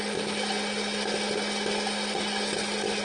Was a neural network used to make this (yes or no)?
no